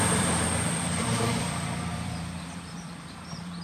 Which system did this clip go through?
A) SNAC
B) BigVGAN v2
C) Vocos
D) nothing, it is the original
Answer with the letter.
B